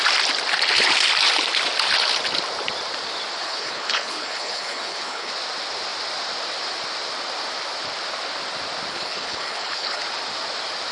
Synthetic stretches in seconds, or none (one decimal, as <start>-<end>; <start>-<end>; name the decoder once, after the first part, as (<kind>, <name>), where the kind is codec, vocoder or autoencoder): 3.4-5.3 (codec, HILCodec); 8.9-10.0